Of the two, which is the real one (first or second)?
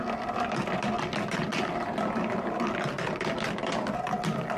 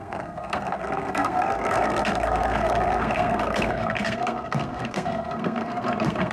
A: first